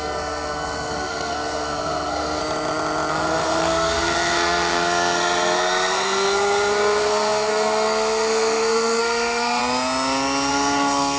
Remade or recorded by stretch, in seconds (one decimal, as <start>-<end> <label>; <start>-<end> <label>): 0.0-2.4 remade; 2.4-3.1 recorded; 3.1-9.6 remade; 9.6-10.5 recorded; 10.5-11.2 remade